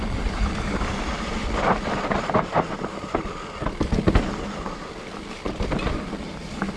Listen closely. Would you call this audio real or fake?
fake